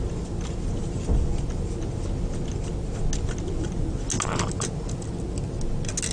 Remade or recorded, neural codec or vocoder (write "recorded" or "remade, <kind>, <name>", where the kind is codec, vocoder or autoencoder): recorded